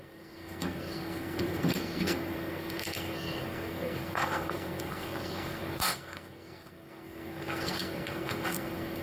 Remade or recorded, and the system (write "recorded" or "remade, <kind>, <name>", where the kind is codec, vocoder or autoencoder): remade, codec, SNAC